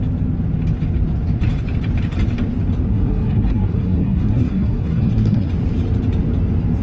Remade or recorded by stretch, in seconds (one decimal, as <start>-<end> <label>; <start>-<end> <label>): 0.0-2.9 recorded; 2.9-5.5 remade; 5.5-6.8 recorded